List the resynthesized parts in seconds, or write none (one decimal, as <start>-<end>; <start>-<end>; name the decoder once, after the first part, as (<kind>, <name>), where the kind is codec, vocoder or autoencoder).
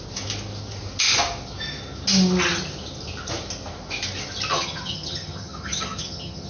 4.5-6.5 (vocoder, HiFi-GAN)